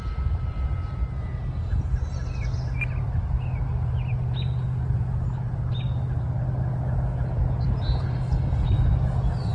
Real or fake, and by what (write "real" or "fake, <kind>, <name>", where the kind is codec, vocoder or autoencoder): real